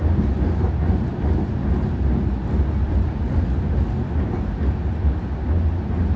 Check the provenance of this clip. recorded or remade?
recorded